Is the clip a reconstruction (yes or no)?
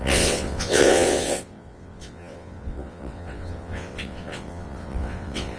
yes